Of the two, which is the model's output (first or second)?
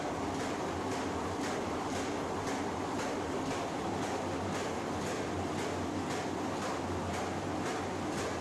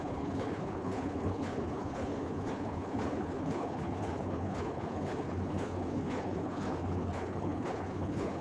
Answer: second